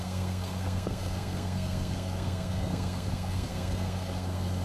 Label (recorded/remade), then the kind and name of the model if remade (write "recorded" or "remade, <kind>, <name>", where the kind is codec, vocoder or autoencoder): remade, codec, SNAC